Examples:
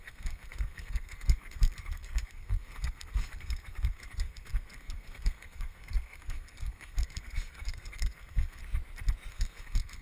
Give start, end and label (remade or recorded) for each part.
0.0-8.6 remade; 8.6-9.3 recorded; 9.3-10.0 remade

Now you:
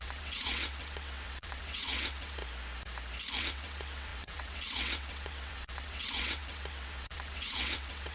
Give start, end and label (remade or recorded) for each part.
0.0-2.4 remade; 2.4-3.4 recorded; 3.4-8.1 remade

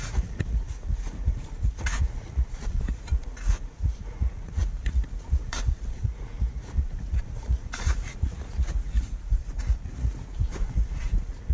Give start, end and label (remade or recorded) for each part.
0.0-11.5 remade

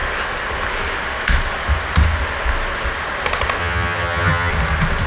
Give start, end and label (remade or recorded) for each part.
0.0-3.6 recorded; 3.6-4.5 remade; 4.5-5.1 recorded

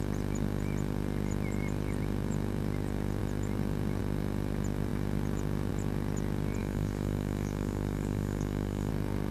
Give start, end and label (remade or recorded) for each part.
0.0-6.6 recorded; 6.6-8.9 remade; 8.9-9.3 recorded

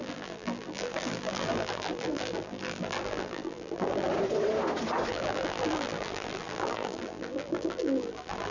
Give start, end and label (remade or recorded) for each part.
0.0-4.1 remade; 4.1-5.1 recorded; 5.1-8.5 remade

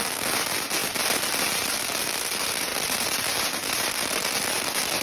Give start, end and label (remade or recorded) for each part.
0.0-5.0 recorded